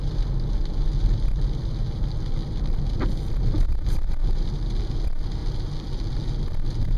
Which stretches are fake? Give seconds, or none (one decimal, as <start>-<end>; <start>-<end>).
2.4-3.5